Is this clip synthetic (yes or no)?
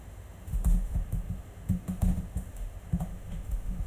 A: yes